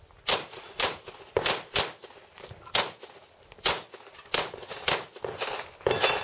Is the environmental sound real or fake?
real